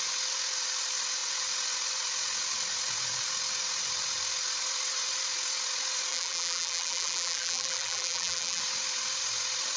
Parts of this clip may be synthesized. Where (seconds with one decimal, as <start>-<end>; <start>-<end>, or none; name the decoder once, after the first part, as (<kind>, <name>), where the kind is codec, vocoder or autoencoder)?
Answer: 6.1-8.6 (vocoder, BigVGAN v2)